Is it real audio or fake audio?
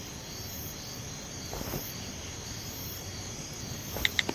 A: real